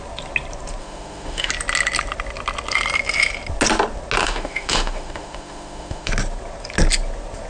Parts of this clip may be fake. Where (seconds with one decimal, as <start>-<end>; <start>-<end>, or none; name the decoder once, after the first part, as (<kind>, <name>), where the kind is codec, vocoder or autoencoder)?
0.8-1.5 (autoencoder, DAC-VAE); 4.2-6.1